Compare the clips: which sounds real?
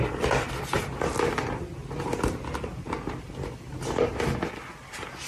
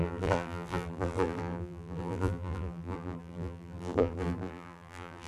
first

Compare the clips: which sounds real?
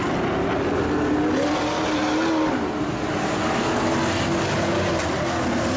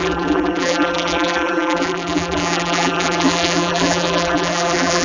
first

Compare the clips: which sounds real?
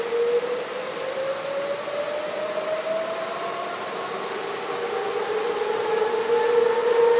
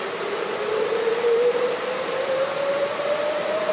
first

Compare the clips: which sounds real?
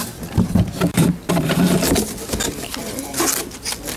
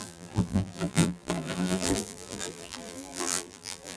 first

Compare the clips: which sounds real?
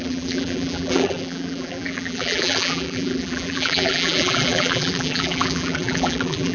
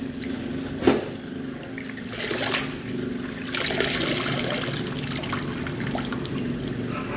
second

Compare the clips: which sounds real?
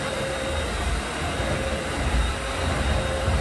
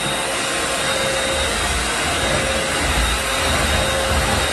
second